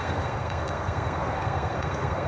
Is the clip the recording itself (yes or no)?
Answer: no